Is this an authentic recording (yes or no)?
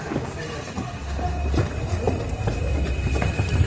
yes